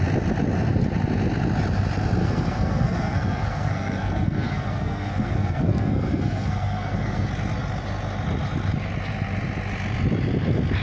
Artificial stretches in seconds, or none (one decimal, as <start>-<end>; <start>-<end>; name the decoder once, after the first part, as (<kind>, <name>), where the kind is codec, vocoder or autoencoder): 2.2-7.3 (codec, SNAC)

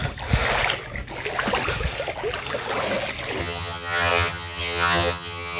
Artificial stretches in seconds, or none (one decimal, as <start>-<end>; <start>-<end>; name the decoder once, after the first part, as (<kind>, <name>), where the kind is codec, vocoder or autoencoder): 3.4-5.6 (vocoder, HiFi-GAN)

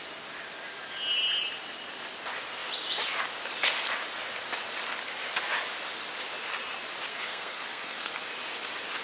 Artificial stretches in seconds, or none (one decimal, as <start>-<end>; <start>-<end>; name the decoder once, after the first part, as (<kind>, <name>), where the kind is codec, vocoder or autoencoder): 7.1-8.1 (codec, SNAC)

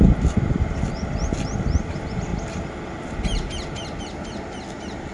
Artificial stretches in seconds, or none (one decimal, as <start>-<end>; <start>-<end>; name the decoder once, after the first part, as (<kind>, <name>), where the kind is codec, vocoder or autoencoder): none

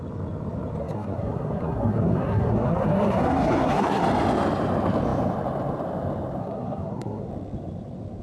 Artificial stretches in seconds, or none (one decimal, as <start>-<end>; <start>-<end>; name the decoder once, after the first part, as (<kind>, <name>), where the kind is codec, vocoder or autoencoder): 0.8-4.0 (codec, SNAC); 6.4-7.3